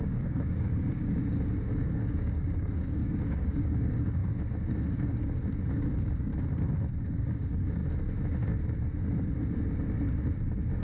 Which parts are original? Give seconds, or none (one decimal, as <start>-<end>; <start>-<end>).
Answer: 4.2-5.7; 6.3-7.0; 7.8-10.8